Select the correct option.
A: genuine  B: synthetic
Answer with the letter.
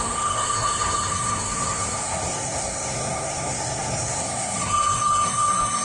B